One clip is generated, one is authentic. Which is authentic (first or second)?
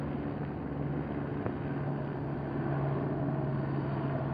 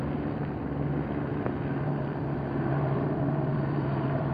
first